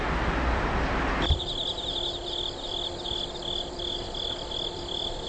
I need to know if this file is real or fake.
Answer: real